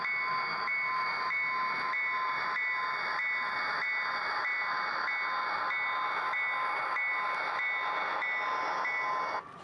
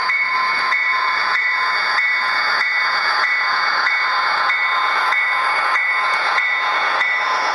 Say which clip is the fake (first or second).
second